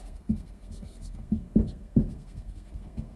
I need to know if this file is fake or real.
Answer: fake